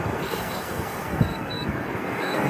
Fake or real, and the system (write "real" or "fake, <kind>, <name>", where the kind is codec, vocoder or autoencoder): fake, codec, SNAC